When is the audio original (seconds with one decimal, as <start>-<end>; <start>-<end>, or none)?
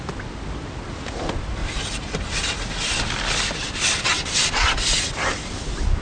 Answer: 0.0-6.0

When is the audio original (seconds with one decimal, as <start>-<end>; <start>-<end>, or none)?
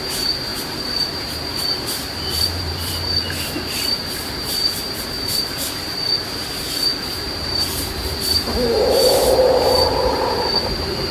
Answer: none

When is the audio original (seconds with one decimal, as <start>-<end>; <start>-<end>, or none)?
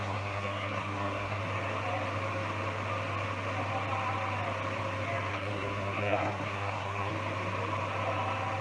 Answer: 1.4-5.3; 7.1-8.6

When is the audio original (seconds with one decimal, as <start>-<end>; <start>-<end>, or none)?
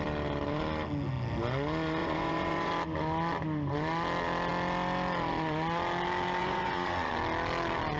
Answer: 0.0-2.0; 2.7-6.4; 7.1-8.0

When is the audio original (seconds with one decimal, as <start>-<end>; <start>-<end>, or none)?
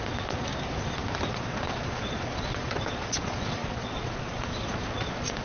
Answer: 0.5-1.3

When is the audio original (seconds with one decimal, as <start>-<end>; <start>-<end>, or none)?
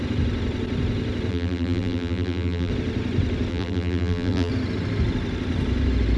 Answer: 0.0-1.3; 2.7-3.5; 4.5-6.2